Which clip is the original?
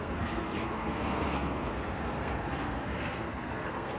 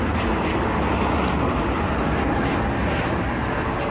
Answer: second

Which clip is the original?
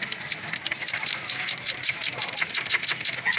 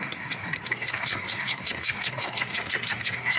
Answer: first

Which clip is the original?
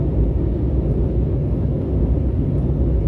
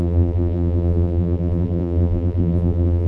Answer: first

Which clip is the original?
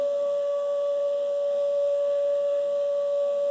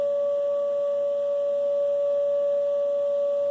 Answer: second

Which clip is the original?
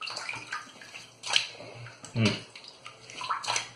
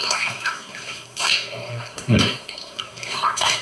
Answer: first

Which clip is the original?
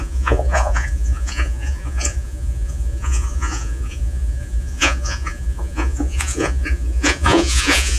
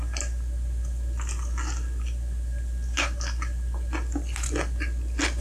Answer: second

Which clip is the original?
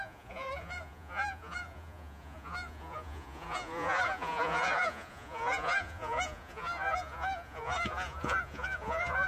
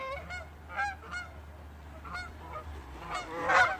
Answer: second